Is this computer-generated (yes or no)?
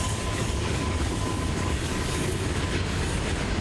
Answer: yes